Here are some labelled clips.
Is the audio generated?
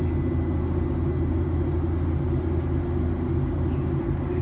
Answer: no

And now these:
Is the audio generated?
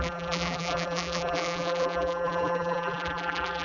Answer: yes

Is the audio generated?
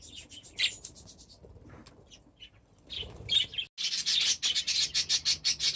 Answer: no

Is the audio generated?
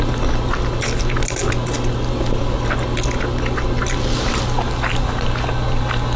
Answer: no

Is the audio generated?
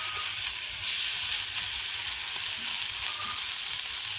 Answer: no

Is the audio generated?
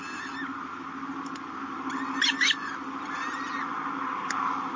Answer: no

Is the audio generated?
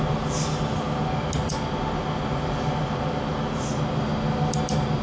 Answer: no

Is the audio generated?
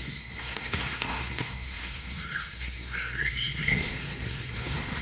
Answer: yes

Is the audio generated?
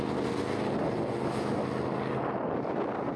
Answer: no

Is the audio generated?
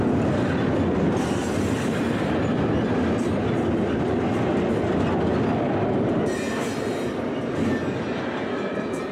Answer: no